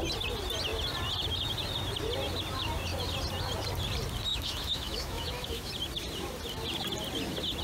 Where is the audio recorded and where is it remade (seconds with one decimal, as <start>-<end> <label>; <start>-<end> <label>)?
0.0-4.3 recorded; 4.3-5.7 remade; 5.7-7.6 recorded